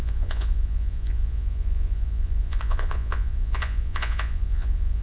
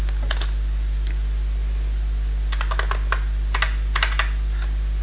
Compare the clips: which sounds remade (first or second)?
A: first